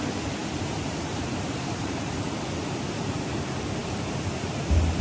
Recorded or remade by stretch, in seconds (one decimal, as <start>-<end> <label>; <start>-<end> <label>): 0.0-0.4 recorded; 0.4-2.1 remade; 2.1-5.0 recorded